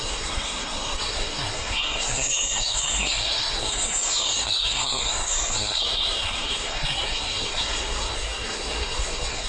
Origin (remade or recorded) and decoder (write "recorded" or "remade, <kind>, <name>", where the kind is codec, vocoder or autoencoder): remade, codec, SNAC